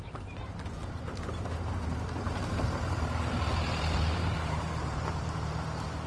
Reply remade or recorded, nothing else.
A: remade